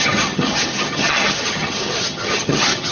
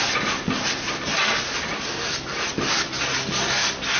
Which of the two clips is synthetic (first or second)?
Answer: first